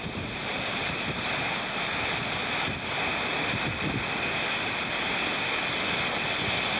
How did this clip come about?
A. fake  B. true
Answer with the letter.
B